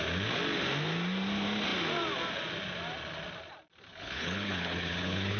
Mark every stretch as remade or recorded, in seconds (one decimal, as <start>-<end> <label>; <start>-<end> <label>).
0.0-3.9 recorded; 3.9-5.4 remade